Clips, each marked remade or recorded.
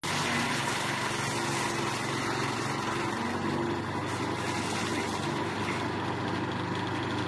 recorded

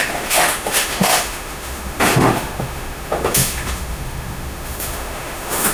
remade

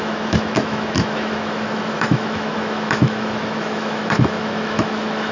remade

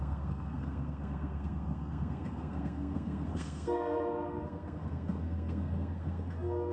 remade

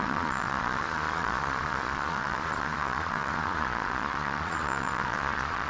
remade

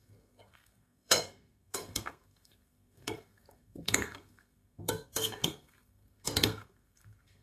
remade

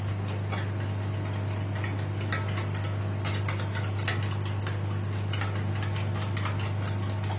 recorded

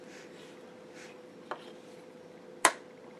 remade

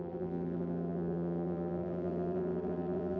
remade